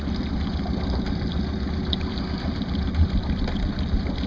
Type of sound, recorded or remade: recorded